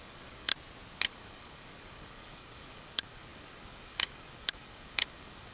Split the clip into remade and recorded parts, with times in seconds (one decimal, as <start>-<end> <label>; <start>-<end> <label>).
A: 0.0-0.5 remade; 0.5-1.1 recorded; 1.1-5.5 remade